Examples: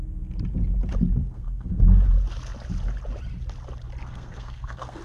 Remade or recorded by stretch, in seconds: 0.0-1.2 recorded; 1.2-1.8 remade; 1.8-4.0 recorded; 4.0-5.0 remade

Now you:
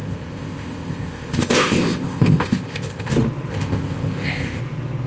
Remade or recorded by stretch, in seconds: 0.0-3.1 remade; 3.1-3.5 recorded; 3.5-4.6 remade; 4.6-5.1 recorded

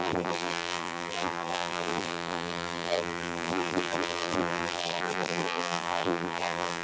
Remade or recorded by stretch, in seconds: 0.0-6.8 remade

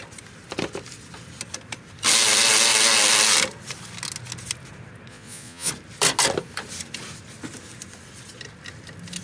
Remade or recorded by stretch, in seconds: 0.0-5.1 recorded; 5.1-5.7 remade; 5.7-9.2 recorded

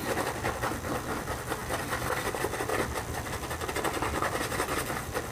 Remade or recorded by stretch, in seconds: 0.0-1.6 recorded; 1.6-2.3 remade; 2.3-2.7 recorded; 2.7-3.7 remade; 3.7-5.3 recorded

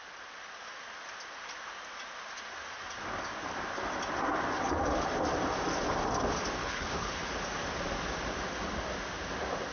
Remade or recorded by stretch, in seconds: 0.0-6.6 recorded; 6.6-7.2 remade; 7.2-9.7 recorded